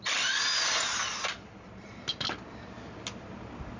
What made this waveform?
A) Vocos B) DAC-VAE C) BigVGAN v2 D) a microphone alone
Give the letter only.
D